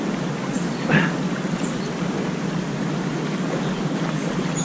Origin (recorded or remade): recorded